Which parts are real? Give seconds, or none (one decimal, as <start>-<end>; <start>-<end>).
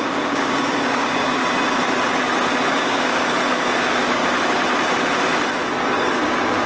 1.4-2.7; 4.2-5.9